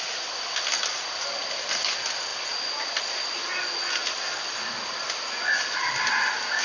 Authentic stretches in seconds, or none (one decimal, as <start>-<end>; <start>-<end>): 0.0-6.6